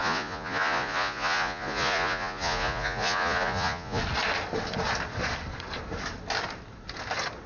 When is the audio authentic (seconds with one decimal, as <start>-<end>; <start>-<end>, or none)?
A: 4.0-7.5